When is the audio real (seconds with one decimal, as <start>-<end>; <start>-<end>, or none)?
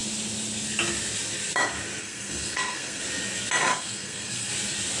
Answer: 0.0-2.0; 3.0-3.7; 4.5-5.0